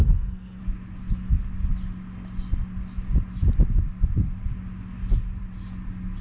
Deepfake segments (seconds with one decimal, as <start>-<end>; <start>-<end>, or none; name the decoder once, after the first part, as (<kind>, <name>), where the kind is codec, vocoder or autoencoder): 0.0-0.6 (codec, SNAC)